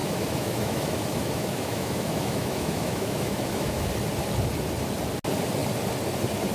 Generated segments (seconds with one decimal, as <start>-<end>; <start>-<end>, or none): 0.0-3.9